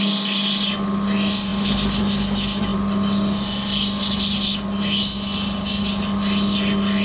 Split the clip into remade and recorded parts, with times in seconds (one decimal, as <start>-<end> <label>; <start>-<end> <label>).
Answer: 0.0-7.0 recorded